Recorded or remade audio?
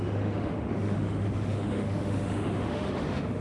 remade